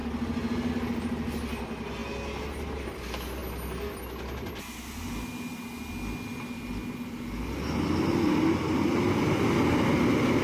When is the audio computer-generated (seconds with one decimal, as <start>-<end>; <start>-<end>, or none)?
none